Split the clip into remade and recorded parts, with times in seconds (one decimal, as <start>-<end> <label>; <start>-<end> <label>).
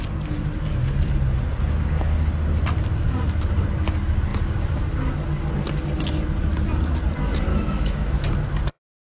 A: 0.0-7.5 recorded; 7.5-8.2 remade; 8.2-9.2 recorded